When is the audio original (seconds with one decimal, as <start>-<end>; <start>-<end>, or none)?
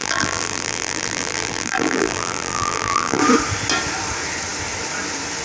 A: 3.2-5.4